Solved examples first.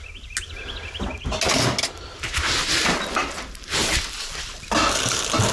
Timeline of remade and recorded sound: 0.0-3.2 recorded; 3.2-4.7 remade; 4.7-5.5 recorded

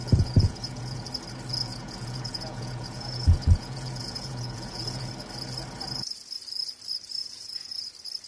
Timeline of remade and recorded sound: 0.0-1.0 remade; 1.0-1.5 recorded; 1.5-5.1 remade; 5.1-7.2 recorded; 7.2-7.9 remade; 7.9-8.3 recorded

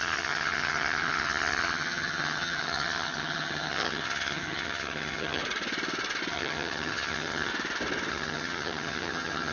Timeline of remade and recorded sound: 0.0-5.4 remade; 5.4-6.3 recorded; 6.3-7.5 remade; 7.5-8.1 recorded; 8.1-9.5 remade

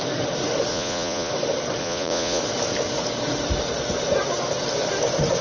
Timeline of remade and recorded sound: 0.0-0.7 recorded; 0.7-1.3 remade; 1.3-1.8 recorded; 1.8-2.4 remade; 2.4-5.4 recorded

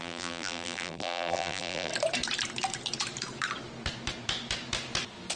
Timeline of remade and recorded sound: 0.0-1.9 remade; 1.9-5.4 recorded

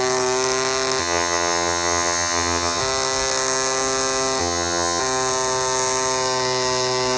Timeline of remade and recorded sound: 0.0-1.0 recorded; 1.0-2.8 remade; 2.8-4.4 recorded; 4.4-5.0 remade; 5.0-7.2 recorded

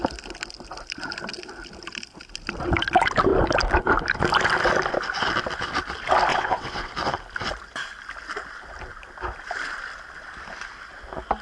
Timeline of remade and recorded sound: 0.0-6.3 recorded; 6.3-6.9 remade; 6.9-11.4 recorded